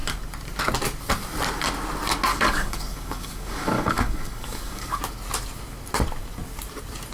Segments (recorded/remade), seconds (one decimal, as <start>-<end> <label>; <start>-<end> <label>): 0.0-2.3 recorded; 2.3-5.0 remade; 5.0-7.1 recorded